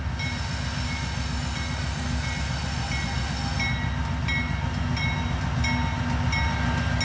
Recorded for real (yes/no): yes